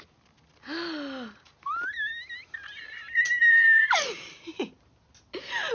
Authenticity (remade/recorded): recorded